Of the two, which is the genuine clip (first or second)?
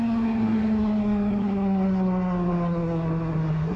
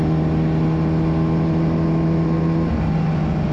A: second